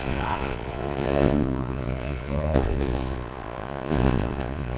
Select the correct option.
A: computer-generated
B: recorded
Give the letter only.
A